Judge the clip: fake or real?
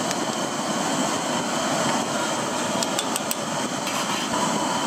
real